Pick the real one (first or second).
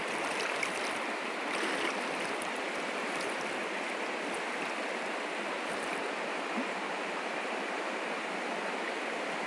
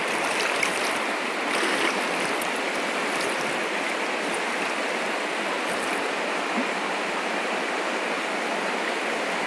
second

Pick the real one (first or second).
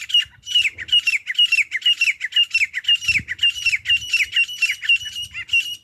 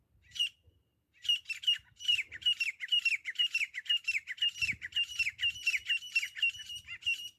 first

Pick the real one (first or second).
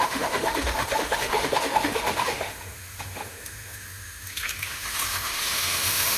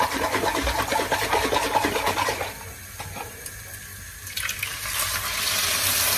second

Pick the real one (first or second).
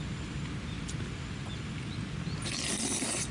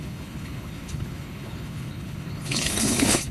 first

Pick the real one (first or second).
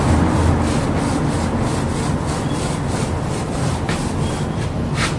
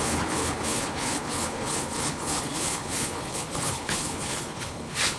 first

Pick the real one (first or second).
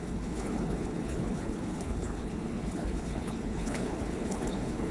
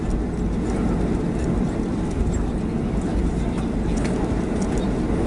second